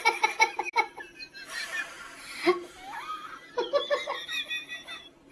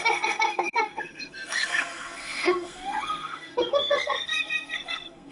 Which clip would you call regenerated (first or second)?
second